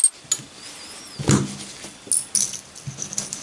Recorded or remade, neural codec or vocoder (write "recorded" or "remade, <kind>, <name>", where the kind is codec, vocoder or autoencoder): recorded